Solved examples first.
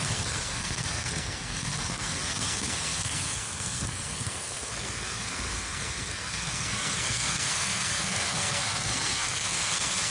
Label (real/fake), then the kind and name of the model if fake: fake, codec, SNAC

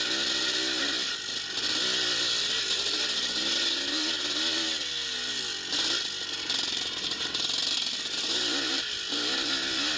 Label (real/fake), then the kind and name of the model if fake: real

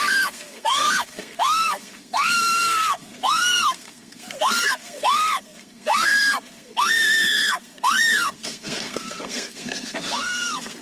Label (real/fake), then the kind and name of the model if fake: fake, codec, SNAC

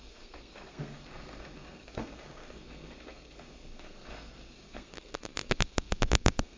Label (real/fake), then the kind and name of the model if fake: fake, codec, SNAC